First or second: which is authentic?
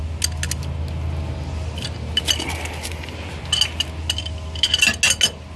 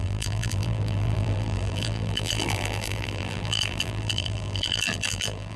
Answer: first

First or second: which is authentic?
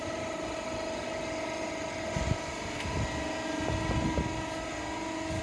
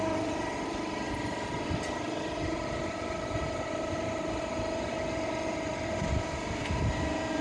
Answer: first